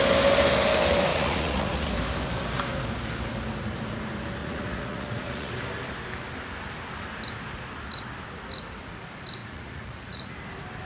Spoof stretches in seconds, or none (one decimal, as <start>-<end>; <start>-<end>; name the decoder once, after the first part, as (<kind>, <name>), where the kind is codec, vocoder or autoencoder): 1.1-1.9 (vocoder, Vocos); 4.4-5.5; 9.4-10.3

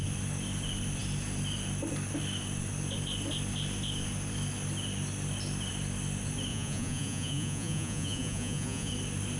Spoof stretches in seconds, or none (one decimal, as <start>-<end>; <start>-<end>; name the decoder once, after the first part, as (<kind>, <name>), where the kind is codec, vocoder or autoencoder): 6.5-8.9 (vocoder, Vocos)

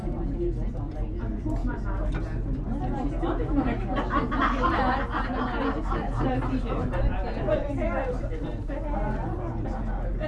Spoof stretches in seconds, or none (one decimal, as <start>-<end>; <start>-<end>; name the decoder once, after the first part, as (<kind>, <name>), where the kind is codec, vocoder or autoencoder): 1.6-2.1 (codec, DAC)

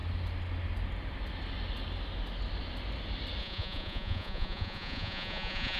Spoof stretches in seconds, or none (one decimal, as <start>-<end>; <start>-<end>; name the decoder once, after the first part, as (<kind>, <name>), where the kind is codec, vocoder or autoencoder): 3.4-5.8 (vocoder, Vocos)